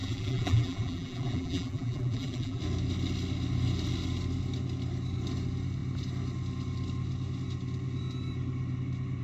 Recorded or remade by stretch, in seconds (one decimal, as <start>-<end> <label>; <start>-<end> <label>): 0.0-2.6 remade; 2.6-9.2 recorded